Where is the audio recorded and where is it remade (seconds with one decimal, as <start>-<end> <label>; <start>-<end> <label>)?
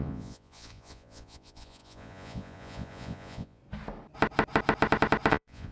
0.0-3.6 remade; 3.6-5.3 recorded; 5.3-5.7 remade